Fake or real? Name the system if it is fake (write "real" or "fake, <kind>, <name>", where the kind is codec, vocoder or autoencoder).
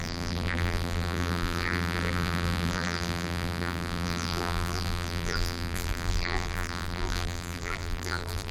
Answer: fake, vocoder, BigVGAN v2